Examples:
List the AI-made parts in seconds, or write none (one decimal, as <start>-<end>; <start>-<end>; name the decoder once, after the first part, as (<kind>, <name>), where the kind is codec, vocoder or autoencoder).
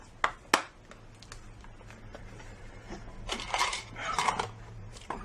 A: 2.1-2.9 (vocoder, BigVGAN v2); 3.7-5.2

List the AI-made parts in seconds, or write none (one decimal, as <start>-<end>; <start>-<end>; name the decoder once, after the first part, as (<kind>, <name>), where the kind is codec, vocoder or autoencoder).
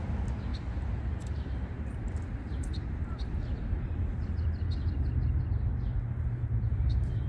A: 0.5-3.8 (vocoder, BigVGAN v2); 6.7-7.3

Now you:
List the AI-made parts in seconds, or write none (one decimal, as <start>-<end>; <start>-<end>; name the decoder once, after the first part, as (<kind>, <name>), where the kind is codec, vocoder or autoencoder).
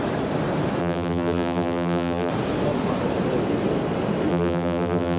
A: 0.8-2.3 (vocoder, BigVGAN v2); 4.3-5.2